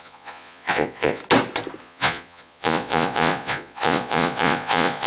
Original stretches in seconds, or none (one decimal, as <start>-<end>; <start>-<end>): 1.2-1.8